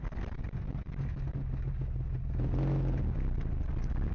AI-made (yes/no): no